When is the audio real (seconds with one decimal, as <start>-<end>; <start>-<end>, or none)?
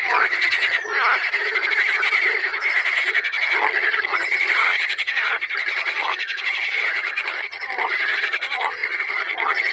0.9-3.1